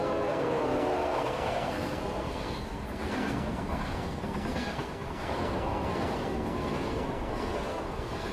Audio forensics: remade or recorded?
remade